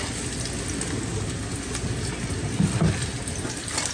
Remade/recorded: recorded